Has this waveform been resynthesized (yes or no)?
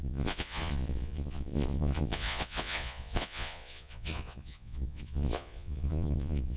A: yes